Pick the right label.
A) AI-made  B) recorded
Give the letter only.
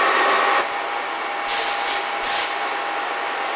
B